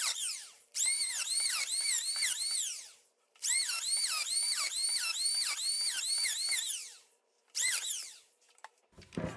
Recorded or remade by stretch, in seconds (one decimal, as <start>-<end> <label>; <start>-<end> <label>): 0.0-4.8 remade; 4.8-6.0 recorded; 6.0-9.4 remade